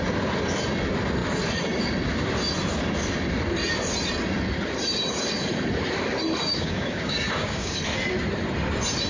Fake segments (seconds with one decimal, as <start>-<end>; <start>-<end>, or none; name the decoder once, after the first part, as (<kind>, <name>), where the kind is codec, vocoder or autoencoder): 6.5-7.8 (codec, DAC)